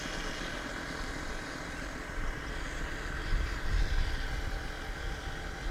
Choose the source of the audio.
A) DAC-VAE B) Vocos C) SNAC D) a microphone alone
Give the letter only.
D